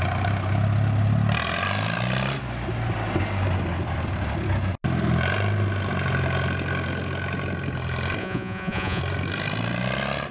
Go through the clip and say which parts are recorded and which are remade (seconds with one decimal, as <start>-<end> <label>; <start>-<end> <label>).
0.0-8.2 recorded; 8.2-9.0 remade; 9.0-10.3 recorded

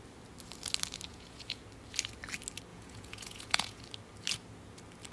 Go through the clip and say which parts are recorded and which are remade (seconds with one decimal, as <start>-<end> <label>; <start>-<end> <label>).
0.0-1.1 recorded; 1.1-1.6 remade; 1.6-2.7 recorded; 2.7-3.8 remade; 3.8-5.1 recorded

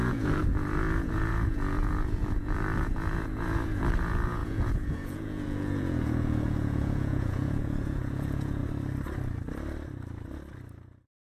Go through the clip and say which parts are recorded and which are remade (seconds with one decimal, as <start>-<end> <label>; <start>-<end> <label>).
0.0-8.6 remade; 8.6-11.2 recorded